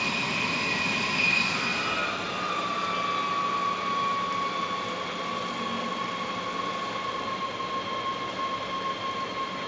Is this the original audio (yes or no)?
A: yes